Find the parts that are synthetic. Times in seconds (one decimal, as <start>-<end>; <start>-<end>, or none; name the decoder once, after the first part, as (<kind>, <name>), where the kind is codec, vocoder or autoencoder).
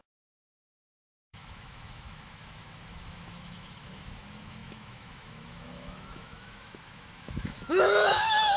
0.0-8.6 (autoencoder, DAC-VAE)